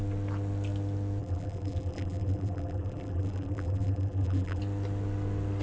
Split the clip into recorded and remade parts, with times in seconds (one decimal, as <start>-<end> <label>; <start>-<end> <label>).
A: 0.0-1.2 recorded; 1.2-4.6 remade; 4.6-5.6 recorded